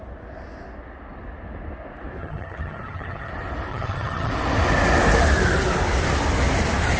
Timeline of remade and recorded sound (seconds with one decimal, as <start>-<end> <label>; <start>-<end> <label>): 0.0-2.2 recorded; 2.2-3.3 remade; 3.3-3.7 recorded; 3.7-4.3 remade; 4.3-7.0 recorded